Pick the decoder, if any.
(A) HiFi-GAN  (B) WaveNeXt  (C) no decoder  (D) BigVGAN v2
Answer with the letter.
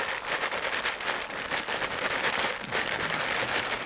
C